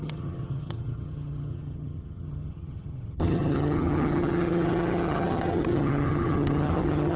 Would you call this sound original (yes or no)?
no